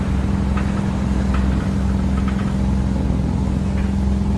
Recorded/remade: recorded